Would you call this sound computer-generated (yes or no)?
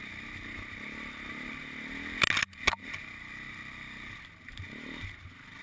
no